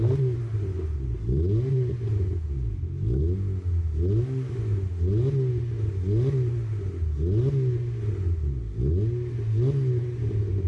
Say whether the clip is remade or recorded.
recorded